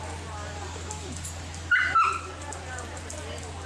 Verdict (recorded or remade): recorded